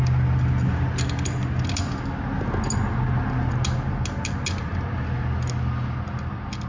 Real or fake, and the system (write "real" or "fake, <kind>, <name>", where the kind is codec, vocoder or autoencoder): real